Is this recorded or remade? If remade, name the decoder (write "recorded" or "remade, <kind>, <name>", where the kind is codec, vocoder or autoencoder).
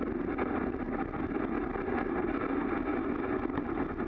recorded